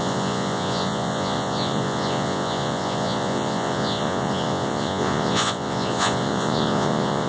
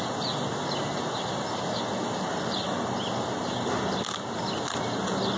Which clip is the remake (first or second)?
first